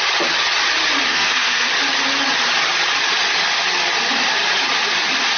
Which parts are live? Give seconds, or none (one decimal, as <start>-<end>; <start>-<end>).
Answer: 0.0-1.1; 1.7-5.4